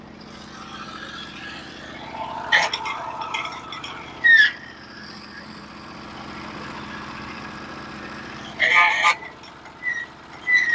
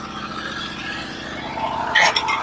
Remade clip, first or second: first